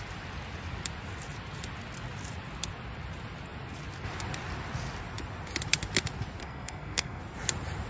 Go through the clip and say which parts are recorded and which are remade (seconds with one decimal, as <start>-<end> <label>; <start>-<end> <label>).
0.0-6.4 recorded; 6.4-7.2 remade; 7.2-7.9 recorded